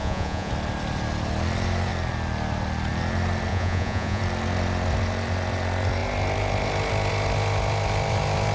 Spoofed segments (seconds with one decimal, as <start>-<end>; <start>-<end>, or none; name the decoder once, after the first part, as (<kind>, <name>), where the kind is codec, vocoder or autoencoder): 0.0-0.5 (vocoder, Vocos); 3.5-4.2

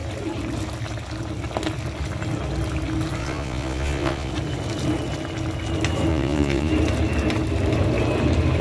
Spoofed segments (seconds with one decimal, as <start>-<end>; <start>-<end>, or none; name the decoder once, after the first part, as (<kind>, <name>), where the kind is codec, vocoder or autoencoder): 3.2-4.3 (vocoder, Vocos); 6.1-6.7

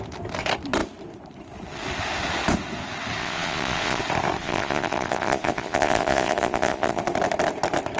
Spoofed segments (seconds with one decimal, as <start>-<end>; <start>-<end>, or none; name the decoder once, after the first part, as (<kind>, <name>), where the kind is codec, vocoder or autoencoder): 3.2-4.0 (vocoder, Vocos); 4.4-7.0

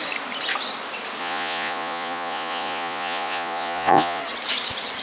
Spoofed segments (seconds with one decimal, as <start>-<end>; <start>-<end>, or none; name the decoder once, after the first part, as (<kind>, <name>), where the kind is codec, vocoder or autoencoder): 1.2-4.2 (vocoder, Vocos)

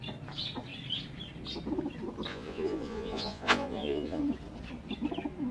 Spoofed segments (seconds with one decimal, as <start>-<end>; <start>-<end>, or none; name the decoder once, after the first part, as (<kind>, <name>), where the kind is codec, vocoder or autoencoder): 2.3-4.2 (vocoder, Vocos)

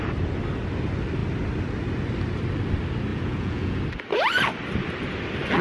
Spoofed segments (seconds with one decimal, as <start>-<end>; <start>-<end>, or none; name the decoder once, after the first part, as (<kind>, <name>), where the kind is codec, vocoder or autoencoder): 3.1-3.8 (vocoder, Vocos)

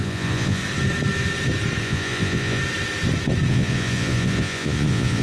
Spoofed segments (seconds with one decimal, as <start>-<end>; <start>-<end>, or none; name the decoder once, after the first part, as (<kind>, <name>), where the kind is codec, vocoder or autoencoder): 0.0-0.6 (vocoder, Vocos); 1.8-2.6; 3.5-5.2

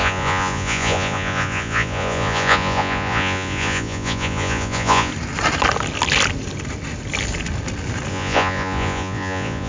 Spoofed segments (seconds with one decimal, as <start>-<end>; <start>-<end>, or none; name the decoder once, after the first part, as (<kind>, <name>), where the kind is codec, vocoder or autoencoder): 0.0-5.1 (vocoder, Vocos); 8.1-9.7